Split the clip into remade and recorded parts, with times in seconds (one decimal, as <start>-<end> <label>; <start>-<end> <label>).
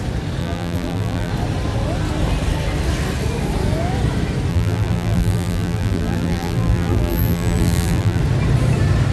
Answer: 0.0-0.4 recorded; 0.4-1.3 remade; 1.3-4.5 recorded; 4.5-8.2 remade; 8.2-9.1 recorded